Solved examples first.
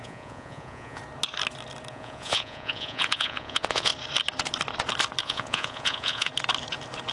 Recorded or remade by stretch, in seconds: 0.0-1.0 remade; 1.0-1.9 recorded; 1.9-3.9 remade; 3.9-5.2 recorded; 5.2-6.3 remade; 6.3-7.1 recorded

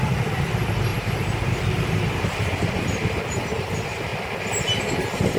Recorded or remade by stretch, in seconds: 0.0-4.1 remade; 4.1-4.8 recorded; 4.8-5.4 remade

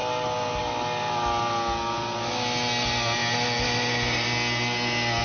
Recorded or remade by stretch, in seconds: 0.0-5.2 recorded

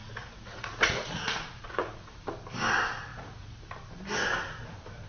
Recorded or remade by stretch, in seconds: 0.0-2.2 remade; 2.2-3.1 recorded; 3.1-3.7 remade; 3.7-5.1 recorded

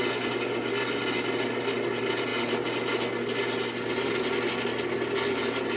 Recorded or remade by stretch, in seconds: 0.0-5.8 recorded

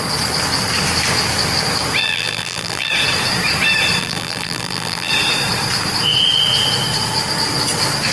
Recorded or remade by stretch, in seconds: 0.0-2.0 recorded; 2.0-2.9 remade; 2.9-4.0 recorded; 4.0-5.1 remade; 5.1-8.1 recorded